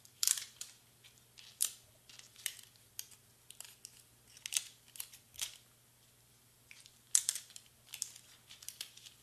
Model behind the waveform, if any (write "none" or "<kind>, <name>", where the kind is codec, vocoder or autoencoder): none